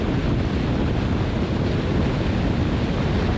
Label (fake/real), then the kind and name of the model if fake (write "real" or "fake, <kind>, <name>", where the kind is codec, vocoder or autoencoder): real